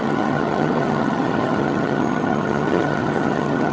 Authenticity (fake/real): fake